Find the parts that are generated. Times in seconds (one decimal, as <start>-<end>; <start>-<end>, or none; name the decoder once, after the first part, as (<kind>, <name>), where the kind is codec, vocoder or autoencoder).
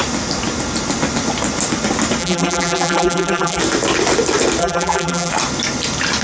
2.2-3.6 (vocoder, BigVGAN v2); 4.6-5.3